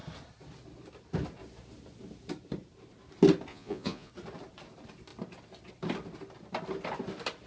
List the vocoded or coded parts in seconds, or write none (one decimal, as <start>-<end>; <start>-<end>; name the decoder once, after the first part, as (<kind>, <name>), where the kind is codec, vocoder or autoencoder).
3.5-4.1 (vocoder, Vocos)